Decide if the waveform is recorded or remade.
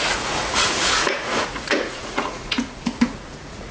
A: remade